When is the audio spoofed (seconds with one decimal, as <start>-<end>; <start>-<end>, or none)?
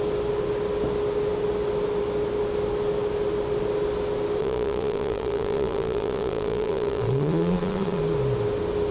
4.4-8.0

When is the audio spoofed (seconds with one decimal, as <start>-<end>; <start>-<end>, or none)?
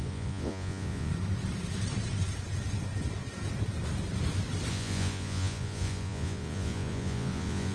0.0-1.1; 4.7-7.7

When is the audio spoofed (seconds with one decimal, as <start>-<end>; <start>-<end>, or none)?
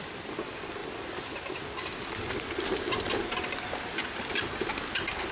none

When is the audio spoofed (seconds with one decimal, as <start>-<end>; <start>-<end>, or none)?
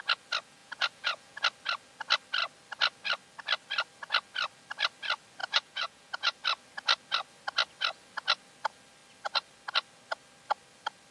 0.6-1.4; 5.4-6.3